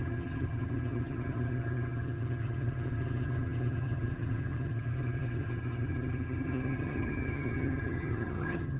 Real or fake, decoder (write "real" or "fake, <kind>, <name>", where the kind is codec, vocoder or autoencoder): fake, vocoder, HiFi-GAN